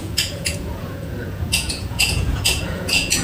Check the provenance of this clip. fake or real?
fake